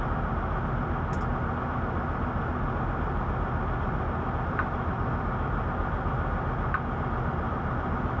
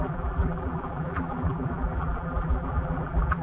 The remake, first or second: second